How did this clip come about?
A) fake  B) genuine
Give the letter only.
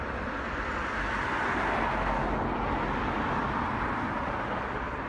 B